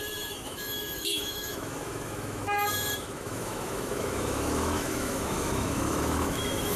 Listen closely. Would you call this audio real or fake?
fake